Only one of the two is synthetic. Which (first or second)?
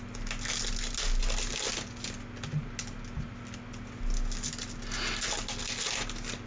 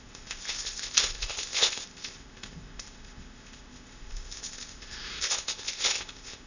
second